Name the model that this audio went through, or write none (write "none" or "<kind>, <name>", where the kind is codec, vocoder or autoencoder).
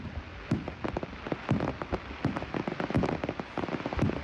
none